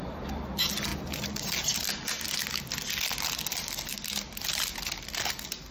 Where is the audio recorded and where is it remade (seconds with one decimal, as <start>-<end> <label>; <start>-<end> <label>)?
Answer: 0.0-5.7 recorded